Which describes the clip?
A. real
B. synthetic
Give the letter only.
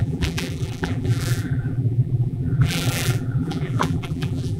B